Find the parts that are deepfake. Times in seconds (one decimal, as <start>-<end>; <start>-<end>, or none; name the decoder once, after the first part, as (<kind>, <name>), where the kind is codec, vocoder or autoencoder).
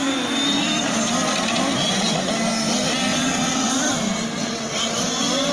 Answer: 3.1-3.7 (vocoder, WaveNeXt); 4.4-5.0